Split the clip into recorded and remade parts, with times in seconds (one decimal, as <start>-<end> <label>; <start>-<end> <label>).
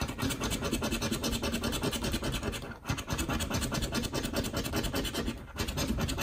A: 0.0-6.2 recorded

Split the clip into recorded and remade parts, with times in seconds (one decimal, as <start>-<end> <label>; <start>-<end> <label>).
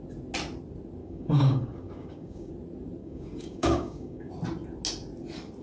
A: 0.0-1.0 recorded; 1.0-2.5 remade; 2.5-3.0 recorded; 3.0-4.3 remade; 4.3-5.6 recorded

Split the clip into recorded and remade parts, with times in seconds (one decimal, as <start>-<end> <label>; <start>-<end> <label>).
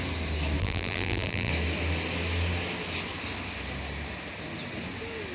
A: 0.0-0.6 recorded; 0.6-1.5 remade; 1.5-5.3 recorded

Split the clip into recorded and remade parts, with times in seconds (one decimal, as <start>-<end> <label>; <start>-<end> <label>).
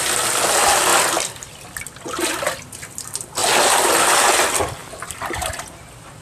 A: 0.0-6.2 recorded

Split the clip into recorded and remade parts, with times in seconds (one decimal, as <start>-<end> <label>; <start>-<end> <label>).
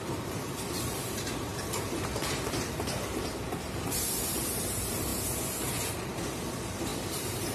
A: 0.0-5.1 remade; 5.1-5.9 recorded; 5.9-7.5 remade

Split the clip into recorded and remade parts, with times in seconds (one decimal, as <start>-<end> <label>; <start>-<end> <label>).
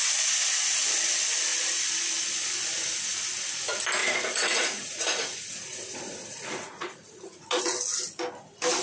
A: 0.0-4.0 recorded; 4.0-7.6 remade; 7.6-8.8 recorded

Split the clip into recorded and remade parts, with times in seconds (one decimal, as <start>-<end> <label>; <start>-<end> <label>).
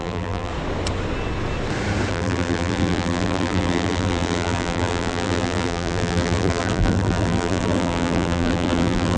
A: 0.0-0.5 remade; 0.5-2.1 recorded; 2.1-9.2 remade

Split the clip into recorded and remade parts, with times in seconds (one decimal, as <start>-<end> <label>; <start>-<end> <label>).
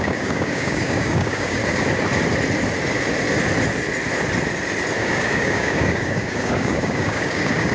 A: 0.0-1.6 remade; 1.6-5.0 recorded; 5.0-7.7 remade